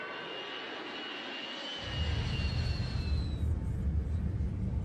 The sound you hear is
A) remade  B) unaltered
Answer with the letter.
B